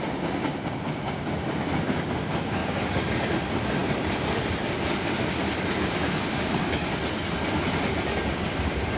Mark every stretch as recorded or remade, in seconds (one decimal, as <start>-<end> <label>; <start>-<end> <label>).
0.0-2.6 recorded; 2.6-3.1 remade; 3.1-6.3 recorded; 6.3-6.9 remade; 6.9-9.0 recorded